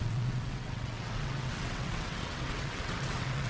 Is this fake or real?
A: fake